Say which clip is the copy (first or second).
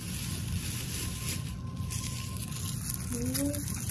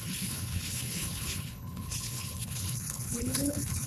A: second